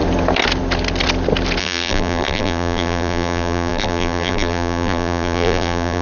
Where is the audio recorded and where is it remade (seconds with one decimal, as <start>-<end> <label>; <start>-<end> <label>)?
0.0-1.6 recorded; 1.6-6.0 remade